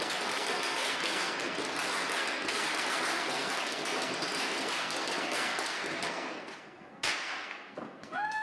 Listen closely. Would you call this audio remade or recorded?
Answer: remade